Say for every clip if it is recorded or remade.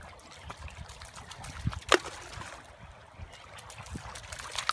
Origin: recorded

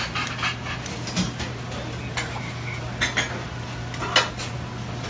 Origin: recorded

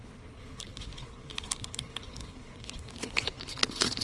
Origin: remade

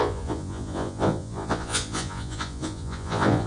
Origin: remade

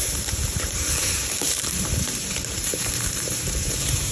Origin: remade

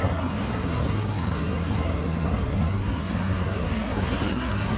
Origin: remade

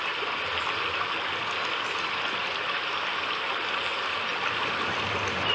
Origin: recorded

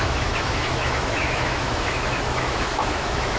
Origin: remade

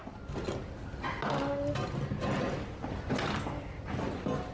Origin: recorded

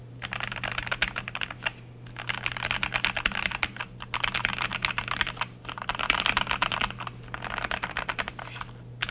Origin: recorded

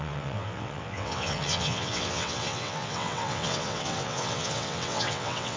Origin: remade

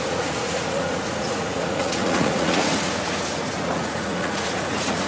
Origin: remade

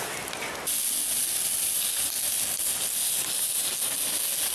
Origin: recorded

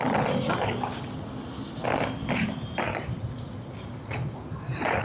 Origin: recorded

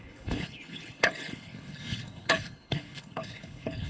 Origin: remade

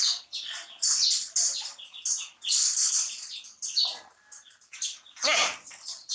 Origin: recorded